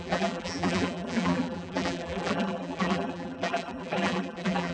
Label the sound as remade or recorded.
remade